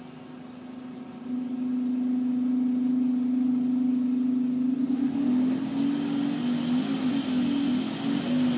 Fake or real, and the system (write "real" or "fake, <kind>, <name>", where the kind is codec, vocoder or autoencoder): real